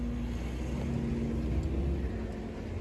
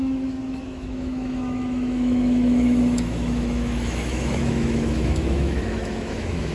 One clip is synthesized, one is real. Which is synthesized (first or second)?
second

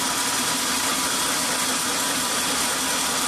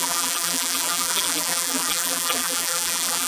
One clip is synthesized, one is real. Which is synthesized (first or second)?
second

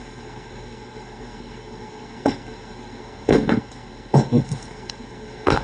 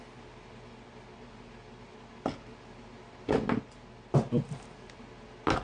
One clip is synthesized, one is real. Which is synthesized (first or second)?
first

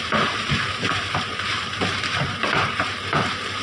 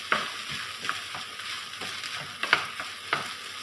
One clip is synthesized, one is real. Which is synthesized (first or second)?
first